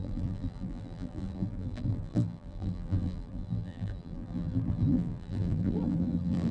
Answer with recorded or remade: remade